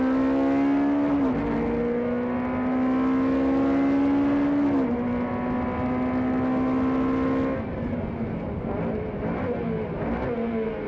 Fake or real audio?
real